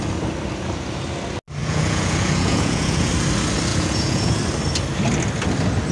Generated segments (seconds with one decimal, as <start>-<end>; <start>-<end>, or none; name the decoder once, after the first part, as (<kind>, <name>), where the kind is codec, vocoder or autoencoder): 1.6-3.1 (vocoder, Vocos); 3.7-4.4